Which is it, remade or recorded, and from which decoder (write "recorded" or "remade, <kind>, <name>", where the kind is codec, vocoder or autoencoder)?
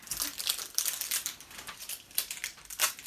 remade, vocoder, BigVGAN v2